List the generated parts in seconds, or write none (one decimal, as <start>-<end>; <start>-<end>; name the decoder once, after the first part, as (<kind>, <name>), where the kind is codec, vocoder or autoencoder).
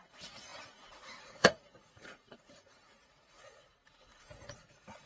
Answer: 0.0-5.1 (vocoder, Vocos)